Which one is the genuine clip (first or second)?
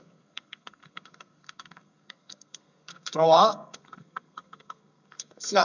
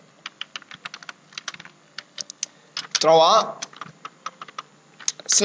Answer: second